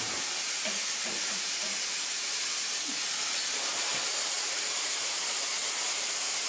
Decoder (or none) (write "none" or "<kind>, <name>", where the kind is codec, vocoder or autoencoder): none